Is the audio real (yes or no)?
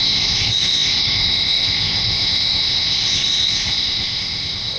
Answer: no